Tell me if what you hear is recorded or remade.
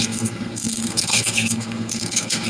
remade